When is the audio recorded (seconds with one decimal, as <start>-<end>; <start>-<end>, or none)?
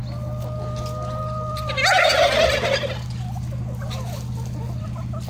0.0-3.2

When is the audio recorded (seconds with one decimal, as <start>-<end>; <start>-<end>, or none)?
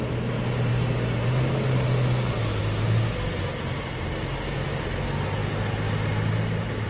0.0-6.9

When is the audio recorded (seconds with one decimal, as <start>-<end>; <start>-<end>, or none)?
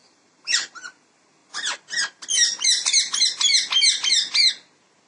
0.6-5.1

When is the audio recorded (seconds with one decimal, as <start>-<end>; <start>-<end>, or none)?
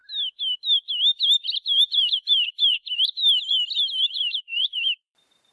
0.0-1.4; 3.2-4.1